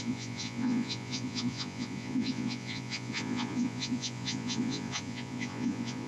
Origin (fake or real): fake